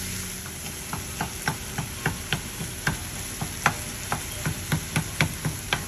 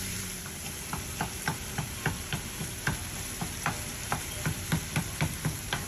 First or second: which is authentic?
first